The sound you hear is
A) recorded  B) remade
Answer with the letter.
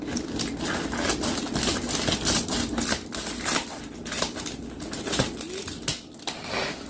A